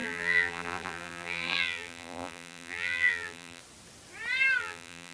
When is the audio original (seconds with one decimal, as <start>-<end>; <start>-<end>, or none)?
3.6-4.6